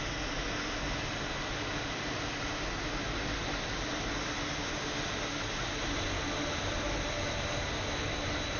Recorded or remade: recorded